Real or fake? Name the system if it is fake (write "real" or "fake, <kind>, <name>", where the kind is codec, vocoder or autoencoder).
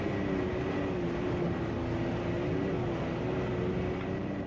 real